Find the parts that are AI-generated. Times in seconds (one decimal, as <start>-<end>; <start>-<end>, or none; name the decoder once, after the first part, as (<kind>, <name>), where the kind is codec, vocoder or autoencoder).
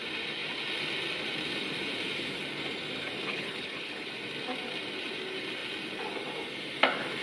3.3-4.1 (codec, HILCodec)